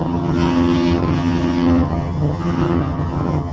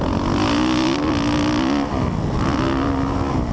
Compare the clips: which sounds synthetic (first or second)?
first